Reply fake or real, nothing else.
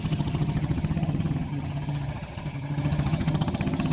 fake